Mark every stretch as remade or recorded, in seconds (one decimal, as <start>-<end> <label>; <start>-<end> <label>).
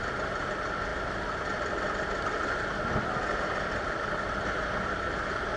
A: 0.0-5.6 recorded